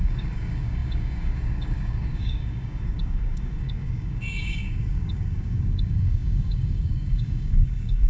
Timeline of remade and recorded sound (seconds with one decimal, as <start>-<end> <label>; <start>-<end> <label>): 0.0-8.1 remade